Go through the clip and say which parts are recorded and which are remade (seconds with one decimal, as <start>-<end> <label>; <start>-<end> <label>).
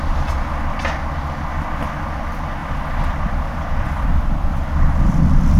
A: 0.0-1.5 recorded; 1.5-2.2 remade; 2.2-2.6 recorded; 2.6-5.1 remade; 5.1-5.6 recorded